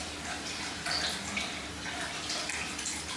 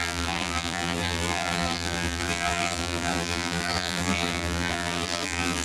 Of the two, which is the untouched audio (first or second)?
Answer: first